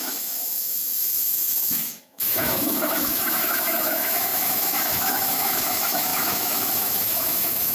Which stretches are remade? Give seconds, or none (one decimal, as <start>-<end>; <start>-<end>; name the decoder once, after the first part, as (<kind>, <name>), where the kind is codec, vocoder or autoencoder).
0.0-7.7 (autoencoder, DAC-VAE)